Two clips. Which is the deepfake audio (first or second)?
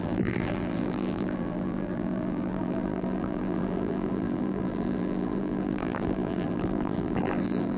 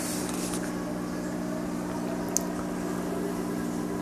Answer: first